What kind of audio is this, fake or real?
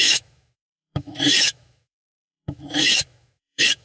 fake